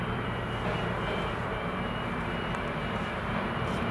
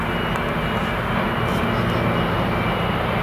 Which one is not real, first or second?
first